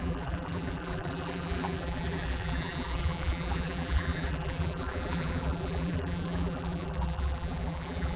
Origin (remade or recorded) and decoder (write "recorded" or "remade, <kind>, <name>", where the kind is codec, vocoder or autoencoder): remade, vocoder, BigVGAN v2